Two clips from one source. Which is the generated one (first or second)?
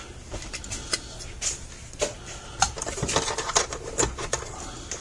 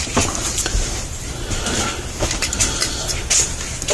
second